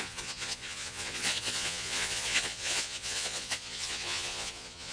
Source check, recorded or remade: remade